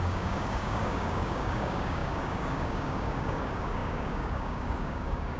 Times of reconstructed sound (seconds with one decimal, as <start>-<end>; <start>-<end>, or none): 0.0-5.4